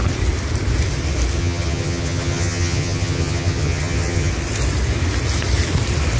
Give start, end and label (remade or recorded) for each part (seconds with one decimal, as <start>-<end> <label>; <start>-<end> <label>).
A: 0.0-1.4 recorded; 1.4-4.3 remade; 4.3-6.2 recorded